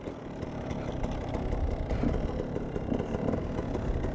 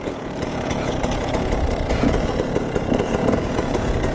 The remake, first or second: second